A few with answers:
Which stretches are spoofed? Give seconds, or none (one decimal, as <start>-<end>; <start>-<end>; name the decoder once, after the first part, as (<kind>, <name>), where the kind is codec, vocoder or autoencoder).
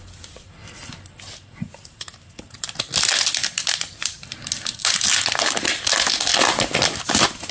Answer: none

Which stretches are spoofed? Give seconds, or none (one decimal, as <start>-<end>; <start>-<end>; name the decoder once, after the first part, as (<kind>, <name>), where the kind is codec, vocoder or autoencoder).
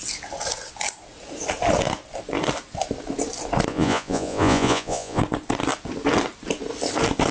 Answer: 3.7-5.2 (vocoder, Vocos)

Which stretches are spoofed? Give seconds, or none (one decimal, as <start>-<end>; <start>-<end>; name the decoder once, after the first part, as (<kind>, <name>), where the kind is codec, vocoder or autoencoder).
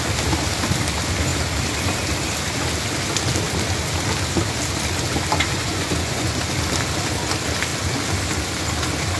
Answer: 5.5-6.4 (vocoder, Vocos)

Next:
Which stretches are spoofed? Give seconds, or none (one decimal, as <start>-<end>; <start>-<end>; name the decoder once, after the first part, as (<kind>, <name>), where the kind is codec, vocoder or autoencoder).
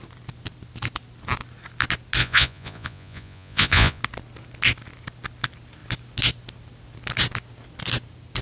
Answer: 2.2-4.0 (vocoder, Vocos)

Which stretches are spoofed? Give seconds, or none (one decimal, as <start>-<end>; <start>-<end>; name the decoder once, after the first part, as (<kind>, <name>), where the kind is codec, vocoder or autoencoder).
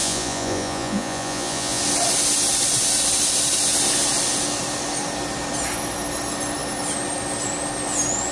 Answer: 0.0-1.8 (vocoder, Vocos)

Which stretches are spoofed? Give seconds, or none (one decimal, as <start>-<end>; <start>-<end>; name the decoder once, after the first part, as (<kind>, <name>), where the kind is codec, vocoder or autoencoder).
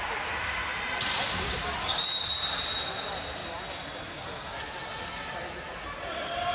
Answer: none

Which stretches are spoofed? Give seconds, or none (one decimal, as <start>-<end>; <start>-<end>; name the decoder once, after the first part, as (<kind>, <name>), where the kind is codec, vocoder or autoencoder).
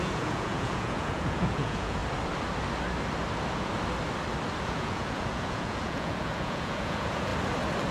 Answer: 0.0-2.0 (vocoder, Vocos); 4.6-7.3